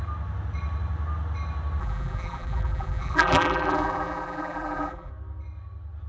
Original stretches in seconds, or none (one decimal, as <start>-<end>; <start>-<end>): 0.0-1.8; 5.1-6.1